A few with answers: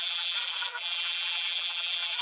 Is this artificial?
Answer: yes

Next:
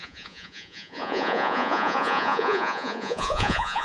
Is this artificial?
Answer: yes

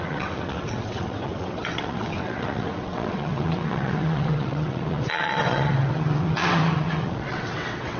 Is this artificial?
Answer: yes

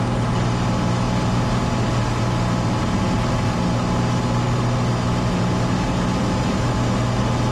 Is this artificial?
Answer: no